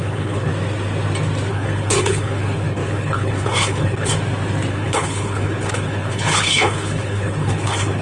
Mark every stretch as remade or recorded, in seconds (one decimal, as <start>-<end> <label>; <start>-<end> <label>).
0.0-0.5 remade; 0.5-1.5 recorded; 1.5-4.1 remade; 4.1-4.7 recorded; 4.7-8.0 remade